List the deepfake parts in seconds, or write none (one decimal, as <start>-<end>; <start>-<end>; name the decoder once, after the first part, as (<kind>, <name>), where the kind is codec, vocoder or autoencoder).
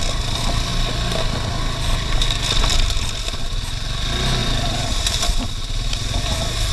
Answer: none